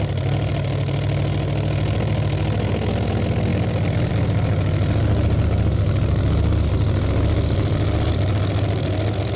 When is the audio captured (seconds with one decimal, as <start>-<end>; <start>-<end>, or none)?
0.0-9.4